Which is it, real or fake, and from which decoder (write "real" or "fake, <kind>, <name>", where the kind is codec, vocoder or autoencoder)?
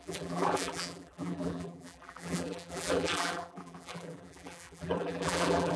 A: fake, vocoder, BigVGAN v2